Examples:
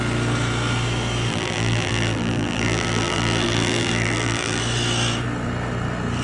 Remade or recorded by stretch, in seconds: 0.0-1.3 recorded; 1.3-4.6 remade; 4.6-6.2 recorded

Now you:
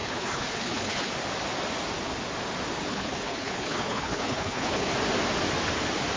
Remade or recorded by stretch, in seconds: 0.0-1.1 remade; 1.1-2.9 recorded; 2.9-4.9 remade; 4.9-6.2 recorded